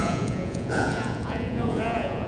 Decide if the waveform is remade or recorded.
remade